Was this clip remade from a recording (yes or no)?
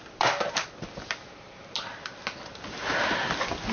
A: no